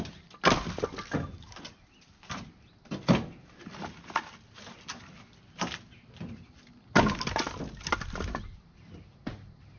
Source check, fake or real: real